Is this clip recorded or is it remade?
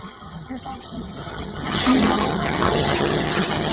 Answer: remade